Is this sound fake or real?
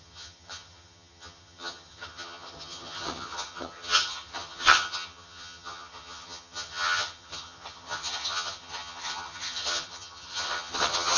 fake